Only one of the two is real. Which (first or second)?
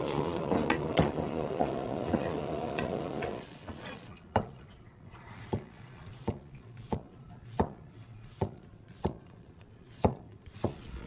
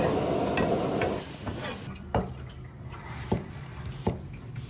second